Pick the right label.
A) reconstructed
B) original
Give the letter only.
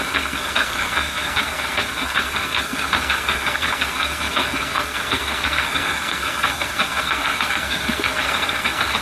A